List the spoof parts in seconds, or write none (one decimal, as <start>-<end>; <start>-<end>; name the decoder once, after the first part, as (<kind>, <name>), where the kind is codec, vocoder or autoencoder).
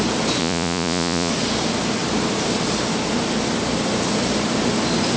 0.4-1.3 (vocoder, Vocos)